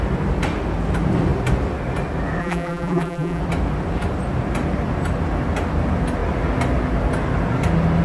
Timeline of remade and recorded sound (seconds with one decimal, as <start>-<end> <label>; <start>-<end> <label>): 0.0-2.4 recorded; 2.4-3.4 remade; 3.4-8.0 recorded